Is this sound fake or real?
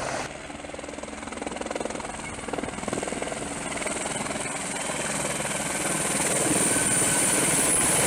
real